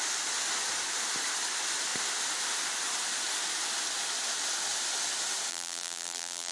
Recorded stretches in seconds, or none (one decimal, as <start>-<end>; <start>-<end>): 0.0-5.5